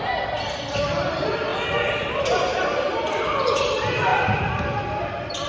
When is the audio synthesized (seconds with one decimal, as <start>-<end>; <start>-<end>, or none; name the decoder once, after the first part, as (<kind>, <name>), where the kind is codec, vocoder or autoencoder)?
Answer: 4.1-5.5 (vocoder, BigVGAN v2)